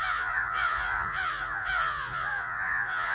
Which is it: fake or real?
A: fake